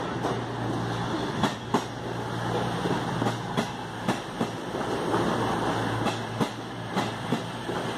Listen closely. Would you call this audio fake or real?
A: real